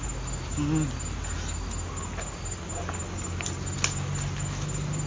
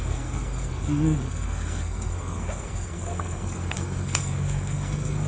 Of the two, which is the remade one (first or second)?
second